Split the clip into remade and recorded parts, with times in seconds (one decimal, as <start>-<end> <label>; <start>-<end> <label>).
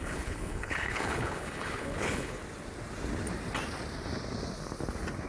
0.0-2.4 remade; 2.4-5.3 recorded